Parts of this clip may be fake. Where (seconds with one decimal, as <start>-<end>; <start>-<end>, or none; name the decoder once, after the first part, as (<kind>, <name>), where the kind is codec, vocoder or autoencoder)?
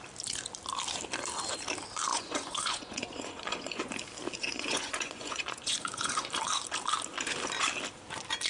2.1-3.9 (vocoder, Vocos); 4.4-6.3